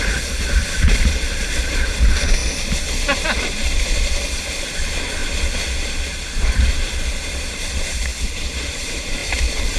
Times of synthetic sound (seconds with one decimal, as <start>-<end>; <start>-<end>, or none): 0.0-2.4; 4.1-5.2; 6.2-8.1; 8.7-9.8